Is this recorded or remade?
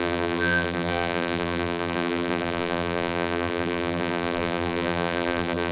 remade